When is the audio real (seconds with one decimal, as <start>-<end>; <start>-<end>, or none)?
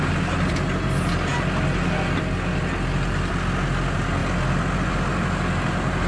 0.0-6.1